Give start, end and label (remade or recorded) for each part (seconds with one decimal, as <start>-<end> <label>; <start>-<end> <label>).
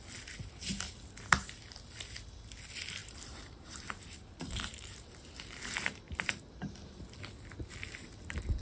0.0-3.0 recorded; 3.0-6.5 remade; 6.5-8.6 recorded